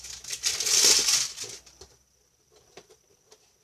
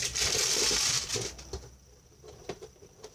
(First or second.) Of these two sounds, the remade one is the second